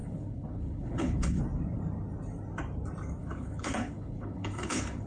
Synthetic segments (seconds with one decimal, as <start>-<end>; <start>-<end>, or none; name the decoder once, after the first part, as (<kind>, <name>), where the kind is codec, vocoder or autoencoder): 0.0-1.4 (codec, HILCodec); 3.2-5.1